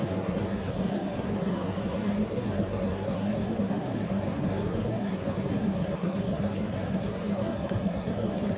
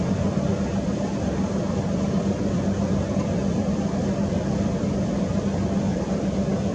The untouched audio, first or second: second